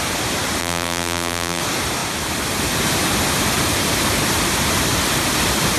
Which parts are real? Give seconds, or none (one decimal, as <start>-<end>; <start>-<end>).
0.0-0.6; 1.6-5.8